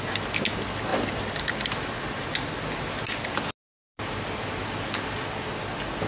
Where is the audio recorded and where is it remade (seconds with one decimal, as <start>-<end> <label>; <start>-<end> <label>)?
0.0-6.1 recorded